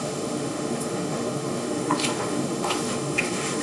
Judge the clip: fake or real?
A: fake